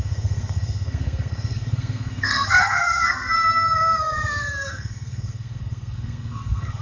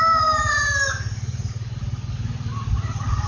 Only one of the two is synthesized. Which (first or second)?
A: first